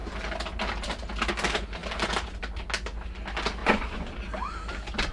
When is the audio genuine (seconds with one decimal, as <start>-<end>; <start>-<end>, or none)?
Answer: 0.0-3.6; 4.2-5.1